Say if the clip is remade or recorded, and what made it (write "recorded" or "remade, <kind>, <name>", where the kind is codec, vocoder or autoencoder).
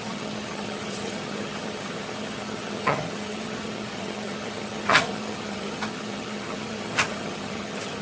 remade, vocoder, HiFi-GAN